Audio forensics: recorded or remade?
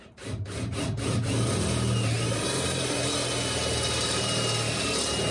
recorded